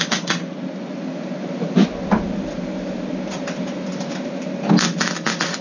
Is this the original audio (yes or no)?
yes